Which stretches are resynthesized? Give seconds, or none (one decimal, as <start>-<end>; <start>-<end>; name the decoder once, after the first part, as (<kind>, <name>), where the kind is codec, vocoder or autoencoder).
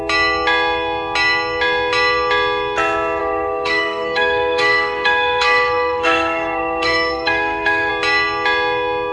3.2-7.9 (codec, SNAC)